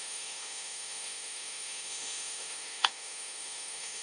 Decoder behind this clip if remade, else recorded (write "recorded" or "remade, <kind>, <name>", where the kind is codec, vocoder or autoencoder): remade, autoencoder, DAC-VAE